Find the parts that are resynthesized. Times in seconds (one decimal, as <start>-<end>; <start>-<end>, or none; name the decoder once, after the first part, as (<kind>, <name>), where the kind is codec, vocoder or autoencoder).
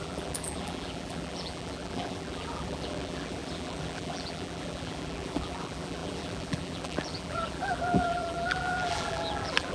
0.0-9.7 (vocoder, BigVGAN v2)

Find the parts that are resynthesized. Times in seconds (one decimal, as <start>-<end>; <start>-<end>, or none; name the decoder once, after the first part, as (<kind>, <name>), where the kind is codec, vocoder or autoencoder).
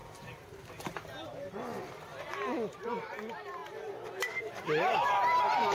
0.0-3.6 (vocoder, BigVGAN v2); 4.4-5.7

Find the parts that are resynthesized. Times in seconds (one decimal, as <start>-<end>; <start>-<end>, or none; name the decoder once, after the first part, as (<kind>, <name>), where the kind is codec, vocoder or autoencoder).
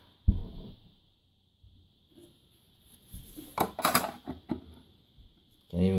0.4-2.1 (vocoder, BigVGAN v2); 3.5-4.6